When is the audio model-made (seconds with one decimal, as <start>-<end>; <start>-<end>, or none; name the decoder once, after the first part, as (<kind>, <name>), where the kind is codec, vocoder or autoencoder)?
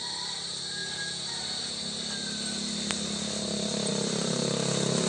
none